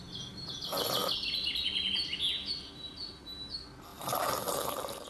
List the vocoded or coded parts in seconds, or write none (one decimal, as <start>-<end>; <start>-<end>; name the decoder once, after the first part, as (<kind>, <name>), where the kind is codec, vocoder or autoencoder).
3.9-4.5 (vocoder, BigVGAN v2)